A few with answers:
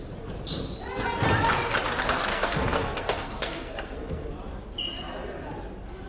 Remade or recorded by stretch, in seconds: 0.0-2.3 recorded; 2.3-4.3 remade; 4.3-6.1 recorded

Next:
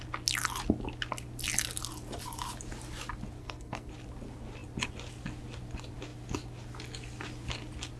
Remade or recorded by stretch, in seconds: 0.0-3.4 recorded; 3.4-3.9 remade; 3.9-8.0 recorded

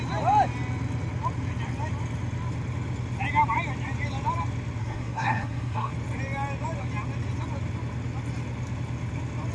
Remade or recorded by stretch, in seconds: 0.0-4.8 recorded; 4.8-5.9 remade; 5.9-9.5 recorded

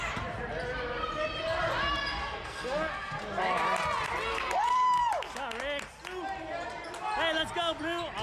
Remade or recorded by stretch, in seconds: 0.0-2.2 recorded; 2.2-3.2 remade; 3.2-4.3 recorded; 4.3-5.0 remade; 5.0-8.2 recorded

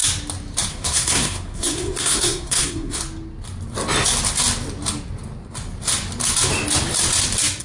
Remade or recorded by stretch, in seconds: 0.0-0.7 recorded; 0.7-3.0 remade; 3.0-7.6 recorded

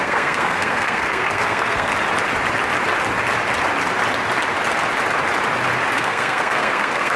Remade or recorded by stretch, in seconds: 0.0-1.9 remade; 1.9-6.0 recorded; 6.0-7.2 remade

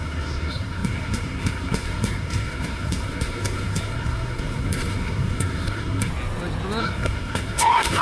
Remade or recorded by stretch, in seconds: 0.0-6.1 remade; 6.1-6.8 recorded; 6.8-8.0 remade

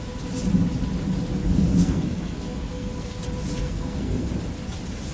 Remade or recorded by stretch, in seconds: 0.0-1.4 recorded; 1.4-3.2 remade; 3.2-3.6 recorded; 3.6-4.3 remade; 4.3-5.1 recorded